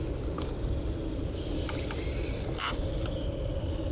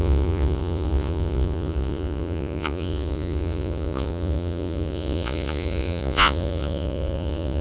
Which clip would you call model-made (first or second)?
second